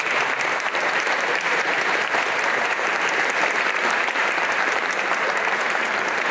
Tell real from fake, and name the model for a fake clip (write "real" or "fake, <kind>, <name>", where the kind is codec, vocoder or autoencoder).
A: fake, vocoder, BigVGAN v2